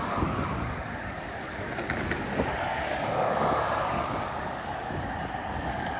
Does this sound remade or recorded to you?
remade